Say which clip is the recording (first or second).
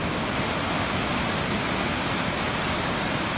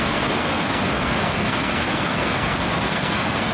first